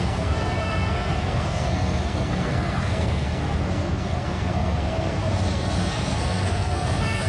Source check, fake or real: fake